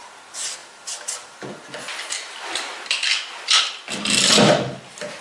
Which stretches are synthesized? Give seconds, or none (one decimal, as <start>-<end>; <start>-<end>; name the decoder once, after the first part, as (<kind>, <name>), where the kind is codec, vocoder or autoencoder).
0.6-1.6 (vocoder, BigVGAN v2); 2.7-3.7